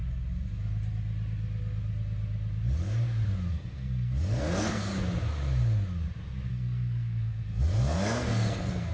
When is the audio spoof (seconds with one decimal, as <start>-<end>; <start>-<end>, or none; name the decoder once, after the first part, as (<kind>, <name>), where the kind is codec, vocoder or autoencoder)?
3.5-4.9 (codec, SNAC); 6.5-8.9

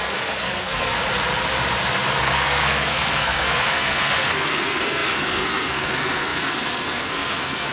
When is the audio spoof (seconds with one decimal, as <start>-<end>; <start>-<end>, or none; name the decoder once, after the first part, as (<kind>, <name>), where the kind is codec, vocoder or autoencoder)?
0.0-1.0 (codec, SNAC); 2.2-7.7

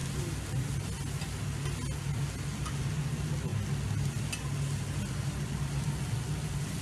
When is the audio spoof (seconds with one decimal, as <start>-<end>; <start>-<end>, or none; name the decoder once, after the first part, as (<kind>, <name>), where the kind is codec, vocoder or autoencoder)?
none

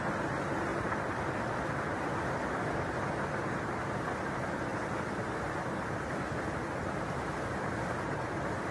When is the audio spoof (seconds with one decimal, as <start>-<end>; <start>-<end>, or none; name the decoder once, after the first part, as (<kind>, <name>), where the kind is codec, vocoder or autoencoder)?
none

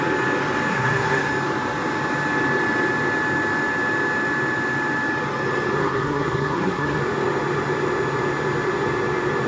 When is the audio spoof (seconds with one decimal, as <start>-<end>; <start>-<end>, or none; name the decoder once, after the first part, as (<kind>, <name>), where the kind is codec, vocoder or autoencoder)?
0.7-1.3 (codec, SNAC); 5.8-7.0

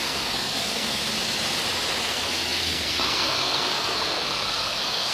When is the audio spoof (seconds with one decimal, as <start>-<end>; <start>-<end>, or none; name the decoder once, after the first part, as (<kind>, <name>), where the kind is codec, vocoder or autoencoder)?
0.0-1.0 (codec, SNAC); 2.0-5.1

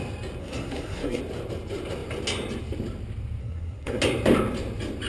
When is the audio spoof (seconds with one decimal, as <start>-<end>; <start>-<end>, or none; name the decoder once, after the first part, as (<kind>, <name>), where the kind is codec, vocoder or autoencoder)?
0.4-1.2 (codec, SNAC); 3.4-4.0